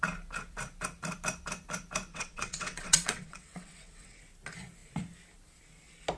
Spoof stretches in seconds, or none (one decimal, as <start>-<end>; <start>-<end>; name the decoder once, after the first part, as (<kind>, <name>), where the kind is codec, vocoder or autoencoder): 2.1-4.2 (vocoder, WaveNeXt)